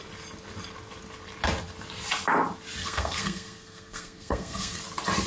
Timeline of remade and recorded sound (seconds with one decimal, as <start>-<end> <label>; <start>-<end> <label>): 0.0-2.8 recorded; 2.8-4.8 remade; 4.8-5.3 recorded